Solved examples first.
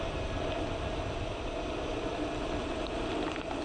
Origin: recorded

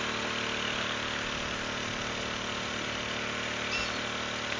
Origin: recorded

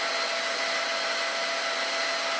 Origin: recorded